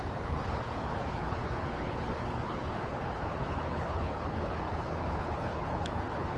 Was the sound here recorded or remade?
remade